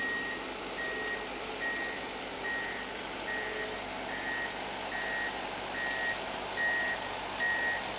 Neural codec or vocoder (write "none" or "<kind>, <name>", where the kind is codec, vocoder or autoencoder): none